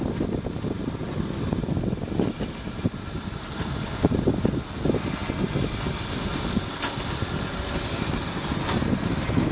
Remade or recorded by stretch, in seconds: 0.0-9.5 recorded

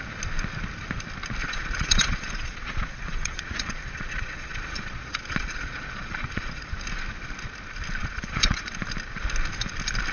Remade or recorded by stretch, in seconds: 0.0-1.4 recorded; 1.4-6.7 remade; 6.7-8.0 recorded; 8.0-8.7 remade; 8.7-10.1 recorded

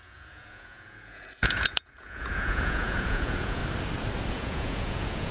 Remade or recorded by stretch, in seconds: 0.0-3.6 remade; 3.6-4.3 recorded; 4.3-5.3 remade

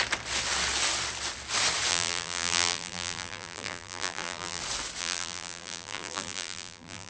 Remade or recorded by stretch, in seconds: 0.0-1.9 recorded; 1.9-4.6 remade; 4.6-5.0 recorded; 5.0-7.1 remade

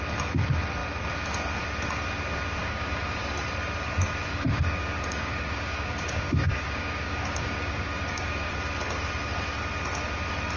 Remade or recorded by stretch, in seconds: 0.0-2.6 recorded; 2.6-3.2 remade; 3.2-4.3 recorded; 4.3-8.5 remade; 8.5-10.6 recorded

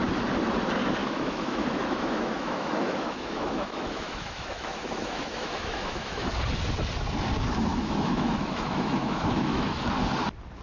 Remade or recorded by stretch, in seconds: 0.0-1.0 recorded; 1.0-6.3 remade; 6.3-7.7 recorded; 7.7-9.8 remade; 9.8-10.6 recorded